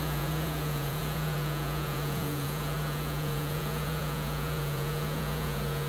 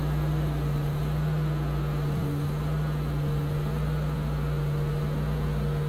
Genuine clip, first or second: second